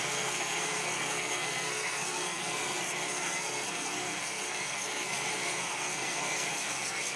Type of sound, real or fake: fake